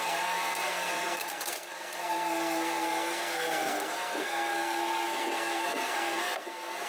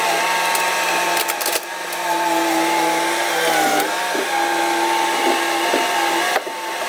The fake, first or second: first